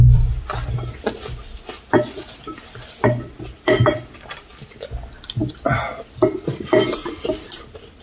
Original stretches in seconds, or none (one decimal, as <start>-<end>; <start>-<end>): 4.8-5.4